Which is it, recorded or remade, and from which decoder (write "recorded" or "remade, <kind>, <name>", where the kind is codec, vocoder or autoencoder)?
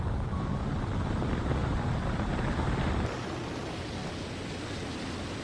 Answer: recorded